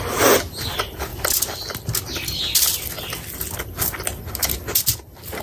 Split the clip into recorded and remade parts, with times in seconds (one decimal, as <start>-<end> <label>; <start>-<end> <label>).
0.0-5.4 recorded